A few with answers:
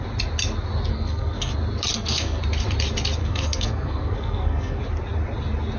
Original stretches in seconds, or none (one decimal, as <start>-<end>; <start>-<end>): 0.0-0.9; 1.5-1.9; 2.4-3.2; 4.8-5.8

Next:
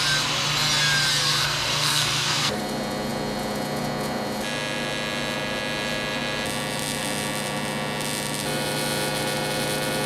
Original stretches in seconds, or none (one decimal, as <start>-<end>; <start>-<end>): 0.0-1.3; 2.6-10.1

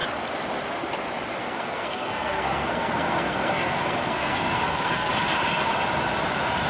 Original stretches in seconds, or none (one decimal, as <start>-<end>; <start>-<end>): 0.0-1.4; 5.1-6.7

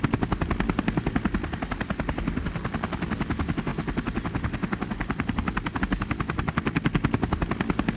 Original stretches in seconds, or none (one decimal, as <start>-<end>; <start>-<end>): 0.0-8.0

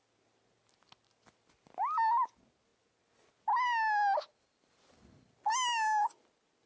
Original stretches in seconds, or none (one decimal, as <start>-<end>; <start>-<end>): 0.0-6.7

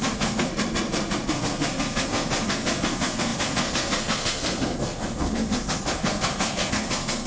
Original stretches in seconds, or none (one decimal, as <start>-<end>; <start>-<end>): 0.5-1.3